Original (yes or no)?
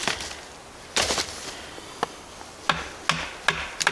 yes